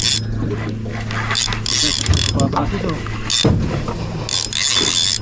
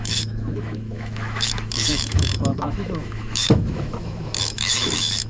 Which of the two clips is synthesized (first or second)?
second